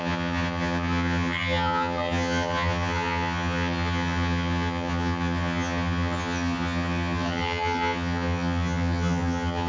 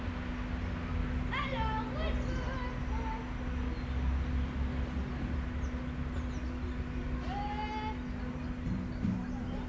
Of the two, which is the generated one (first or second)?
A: first